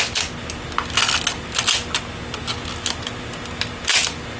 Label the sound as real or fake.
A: real